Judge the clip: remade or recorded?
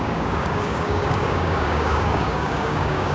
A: remade